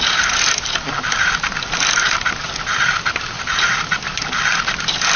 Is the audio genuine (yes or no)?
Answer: yes